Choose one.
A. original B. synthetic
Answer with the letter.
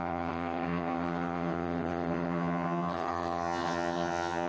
B